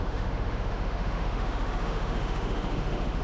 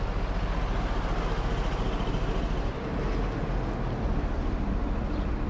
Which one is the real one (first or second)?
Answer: second